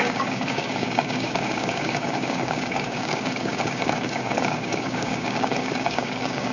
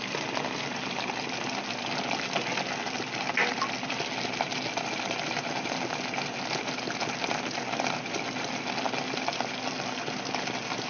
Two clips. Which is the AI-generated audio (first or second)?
first